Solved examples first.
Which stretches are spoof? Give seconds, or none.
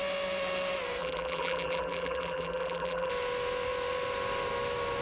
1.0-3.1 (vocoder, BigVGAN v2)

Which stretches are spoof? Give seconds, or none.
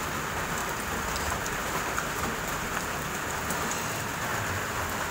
0.6-3.7 (vocoder, BigVGAN v2)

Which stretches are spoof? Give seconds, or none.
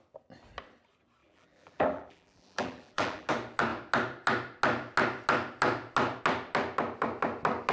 1.2-3.3 (vocoder, BigVGAN v2)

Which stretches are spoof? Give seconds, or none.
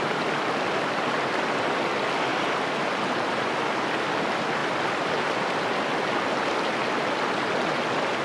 2.3-4.1 (vocoder, BigVGAN v2); 4.6-5.2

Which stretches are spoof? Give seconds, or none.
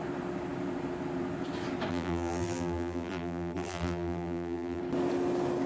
1.9-4.8 (vocoder, BigVGAN v2)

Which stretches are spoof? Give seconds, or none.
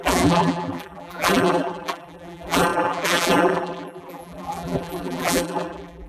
0.0-6.1 (vocoder, BigVGAN v2)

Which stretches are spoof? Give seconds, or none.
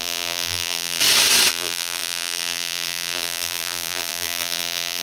0.0-1.0 (vocoder, BigVGAN v2); 1.5-5.0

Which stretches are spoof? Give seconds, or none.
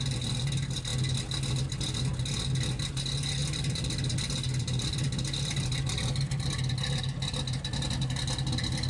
3.4-6.5 (vocoder, BigVGAN v2)